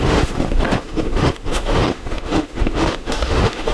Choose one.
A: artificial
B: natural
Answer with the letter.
A